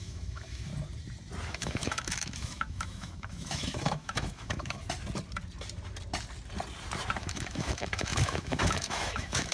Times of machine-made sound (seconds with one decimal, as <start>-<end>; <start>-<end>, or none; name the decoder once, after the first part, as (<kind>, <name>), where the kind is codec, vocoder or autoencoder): 0.0-0.7 (autoencoder, DAC-VAE); 1.5-4.8; 7.2-9.5